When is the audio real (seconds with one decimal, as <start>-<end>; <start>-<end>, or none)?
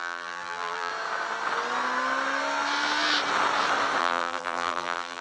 0.9-4.0